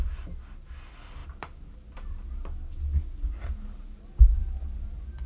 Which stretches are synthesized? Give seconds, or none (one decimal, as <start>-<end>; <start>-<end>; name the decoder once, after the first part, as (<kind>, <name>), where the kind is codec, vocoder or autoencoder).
none